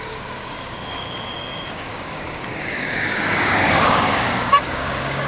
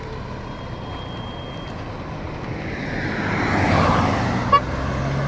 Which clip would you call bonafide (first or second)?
second